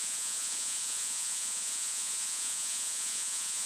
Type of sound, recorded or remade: remade